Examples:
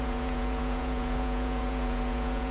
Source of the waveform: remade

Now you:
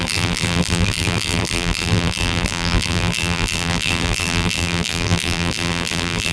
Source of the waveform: remade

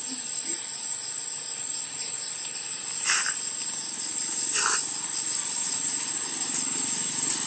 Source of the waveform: remade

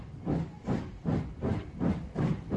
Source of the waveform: recorded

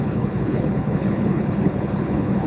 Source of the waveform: remade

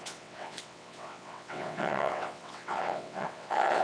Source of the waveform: remade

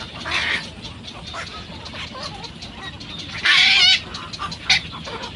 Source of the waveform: recorded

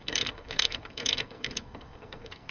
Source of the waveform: remade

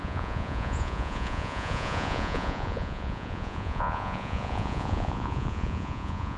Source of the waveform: remade